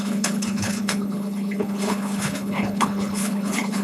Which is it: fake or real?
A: fake